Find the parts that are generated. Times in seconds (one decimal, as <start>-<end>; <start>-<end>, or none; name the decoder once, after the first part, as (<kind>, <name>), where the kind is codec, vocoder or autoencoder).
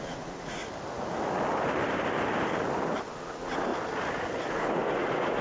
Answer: 0.0-0.6 (vocoder, Vocos); 3.1-3.7; 4.5-5.4